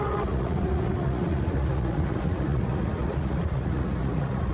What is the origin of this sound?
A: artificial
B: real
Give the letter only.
A